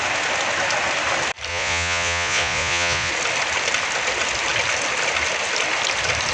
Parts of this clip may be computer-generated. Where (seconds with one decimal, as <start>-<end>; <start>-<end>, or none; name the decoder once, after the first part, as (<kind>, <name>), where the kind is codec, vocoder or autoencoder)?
1.5-3.1 (vocoder, Vocos)